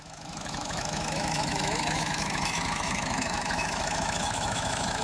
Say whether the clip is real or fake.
fake